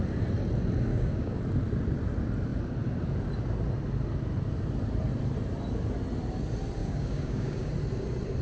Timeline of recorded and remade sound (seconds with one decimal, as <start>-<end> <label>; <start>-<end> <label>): 0.0-0.9 recorded; 0.9-1.4 remade; 1.4-6.8 recorded; 6.8-7.7 remade; 7.7-8.4 recorded